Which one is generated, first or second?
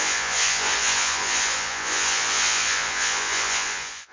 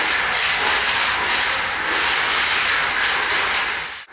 first